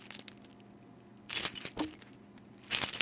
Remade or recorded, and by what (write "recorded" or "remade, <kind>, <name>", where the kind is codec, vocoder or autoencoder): recorded